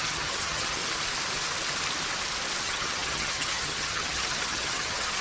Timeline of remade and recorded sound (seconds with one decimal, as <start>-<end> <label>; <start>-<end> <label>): 0.0-0.8 remade; 0.8-2.6 recorded; 2.6-5.2 remade